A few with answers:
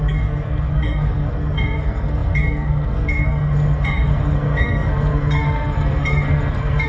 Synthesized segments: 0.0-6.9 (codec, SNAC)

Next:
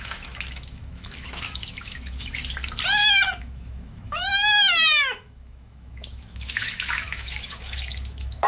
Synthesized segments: 0.0-2.4 (autoencoder, DAC-VAE); 3.4-8.5

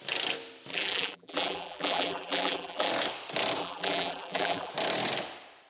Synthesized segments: 0.7-2.9 (vocoder, BigVGAN v2); 3.6-4.7

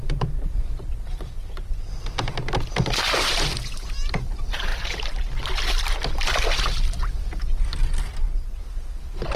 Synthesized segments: none

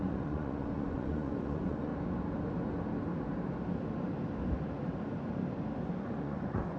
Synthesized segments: 0.0-1.9 (vocoder, Vocos); 6.0-6.8

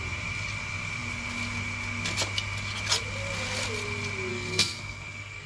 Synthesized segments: 4.3-5.5 (codec, SNAC)

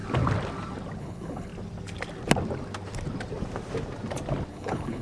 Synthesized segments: 1.0-1.5 (codec, HILCodec); 4.5-5.0

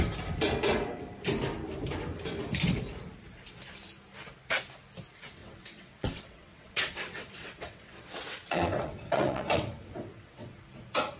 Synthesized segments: 5.4-10.6 (vocoder, WaveNeXt)